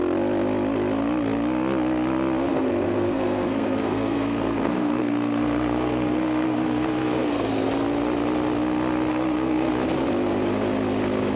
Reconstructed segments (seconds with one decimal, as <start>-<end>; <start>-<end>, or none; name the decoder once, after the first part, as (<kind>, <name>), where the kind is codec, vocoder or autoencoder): 2.5-7.7 (codec, SNAC); 9.1-9.7